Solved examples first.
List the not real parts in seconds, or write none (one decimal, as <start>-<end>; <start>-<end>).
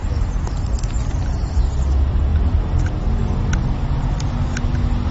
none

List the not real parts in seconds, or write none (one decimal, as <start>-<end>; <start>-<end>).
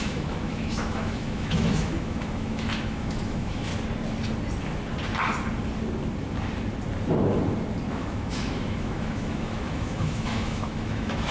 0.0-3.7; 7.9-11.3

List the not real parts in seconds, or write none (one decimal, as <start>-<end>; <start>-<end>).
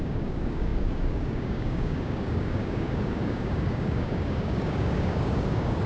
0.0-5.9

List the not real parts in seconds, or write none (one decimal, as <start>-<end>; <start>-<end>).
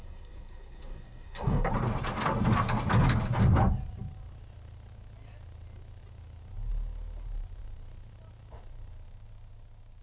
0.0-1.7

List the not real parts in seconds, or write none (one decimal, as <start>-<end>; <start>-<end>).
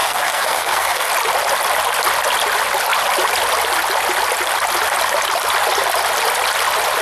0.0-1.1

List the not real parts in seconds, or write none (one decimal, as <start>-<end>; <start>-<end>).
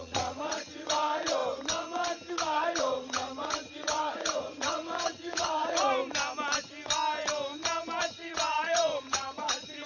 0.0-1.4; 2.3-6.0; 8.0-9.9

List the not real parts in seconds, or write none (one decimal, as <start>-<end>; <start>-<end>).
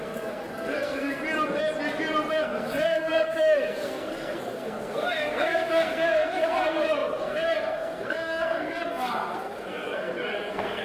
0.0-1.2; 2.3-10.8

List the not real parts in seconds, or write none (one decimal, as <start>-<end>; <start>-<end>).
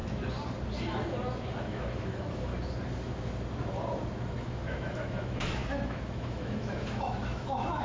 1.6-2.5; 4.4-7.8